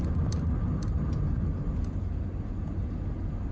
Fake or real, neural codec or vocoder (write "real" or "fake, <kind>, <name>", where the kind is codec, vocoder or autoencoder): real